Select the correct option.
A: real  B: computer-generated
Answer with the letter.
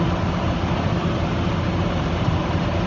A